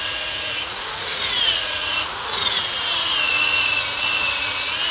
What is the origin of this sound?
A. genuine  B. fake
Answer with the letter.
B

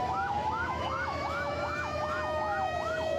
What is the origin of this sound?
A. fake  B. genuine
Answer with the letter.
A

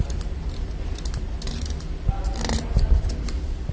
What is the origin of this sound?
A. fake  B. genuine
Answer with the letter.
B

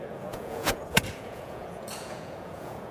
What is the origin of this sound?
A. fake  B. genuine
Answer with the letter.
A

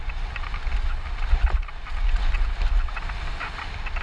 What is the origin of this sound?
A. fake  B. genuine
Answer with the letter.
B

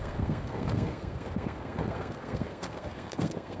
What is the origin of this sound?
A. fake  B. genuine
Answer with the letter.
A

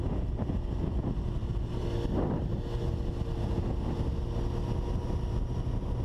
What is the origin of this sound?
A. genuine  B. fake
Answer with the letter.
A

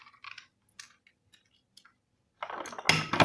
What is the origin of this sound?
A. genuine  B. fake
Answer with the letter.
A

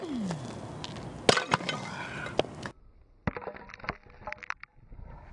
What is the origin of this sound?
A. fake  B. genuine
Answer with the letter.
B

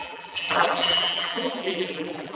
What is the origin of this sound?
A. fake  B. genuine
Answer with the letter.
A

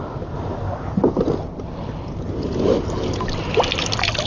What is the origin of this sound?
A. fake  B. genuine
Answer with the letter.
B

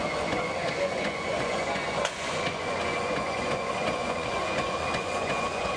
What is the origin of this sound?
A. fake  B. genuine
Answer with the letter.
A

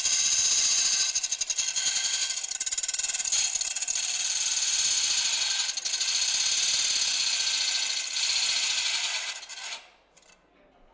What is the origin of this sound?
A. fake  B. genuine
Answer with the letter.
B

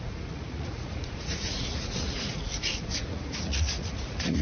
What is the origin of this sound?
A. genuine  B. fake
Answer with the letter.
B